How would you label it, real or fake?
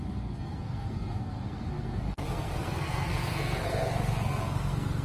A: fake